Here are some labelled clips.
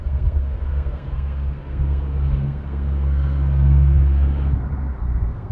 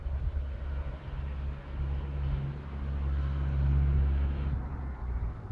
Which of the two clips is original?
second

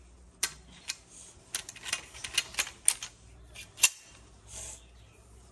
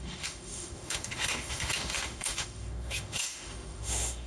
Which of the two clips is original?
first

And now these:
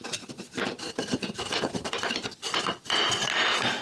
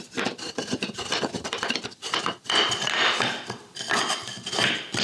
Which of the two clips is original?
first